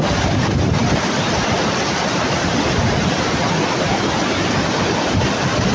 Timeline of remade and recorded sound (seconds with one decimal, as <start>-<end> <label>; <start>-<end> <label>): 0.0-5.7 recorded

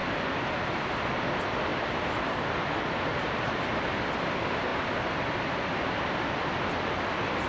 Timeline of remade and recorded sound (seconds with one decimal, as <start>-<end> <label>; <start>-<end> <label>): 0.0-7.5 recorded

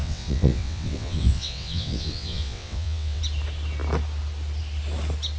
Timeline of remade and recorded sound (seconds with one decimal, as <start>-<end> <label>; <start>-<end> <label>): 0.0-3.2 remade; 3.2-5.4 recorded

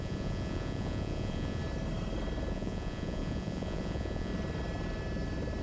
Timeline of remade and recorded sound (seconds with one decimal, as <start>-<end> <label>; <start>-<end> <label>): 0.0-1.6 remade; 1.6-2.5 recorded; 2.5-4.3 remade; 4.3-5.6 recorded

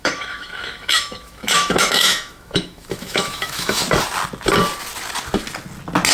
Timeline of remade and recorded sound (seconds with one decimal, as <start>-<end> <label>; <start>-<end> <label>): 0.0-3.8 remade; 3.8-6.1 recorded

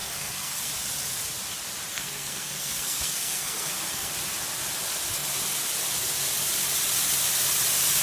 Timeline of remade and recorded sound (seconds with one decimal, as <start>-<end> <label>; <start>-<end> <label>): 0.0-0.7 remade; 0.7-1.9 recorded; 1.9-4.1 remade; 4.1-8.0 recorded

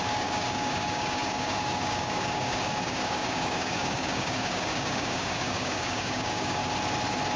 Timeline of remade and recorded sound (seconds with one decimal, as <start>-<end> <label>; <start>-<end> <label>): 0.0-6.6 remade; 6.6-7.4 recorded